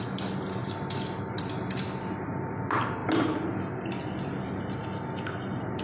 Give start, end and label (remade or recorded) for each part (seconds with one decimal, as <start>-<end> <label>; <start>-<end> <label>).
0.0-5.8 recorded